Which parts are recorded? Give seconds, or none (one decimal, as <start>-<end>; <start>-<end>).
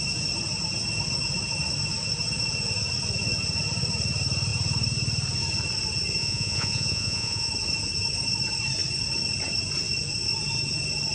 0.0-6.2; 7.5-11.1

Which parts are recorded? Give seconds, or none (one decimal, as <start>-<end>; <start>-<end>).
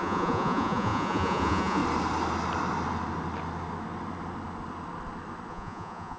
1.8-5.5